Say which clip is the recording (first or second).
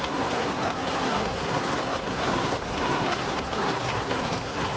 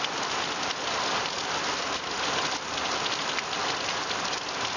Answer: second